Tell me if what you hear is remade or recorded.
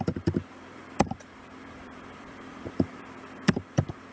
remade